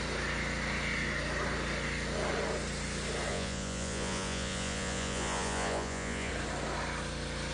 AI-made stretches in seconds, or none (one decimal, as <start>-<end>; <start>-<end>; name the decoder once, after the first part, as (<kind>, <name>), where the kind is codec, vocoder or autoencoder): 3.3-6.3 (vocoder, Vocos)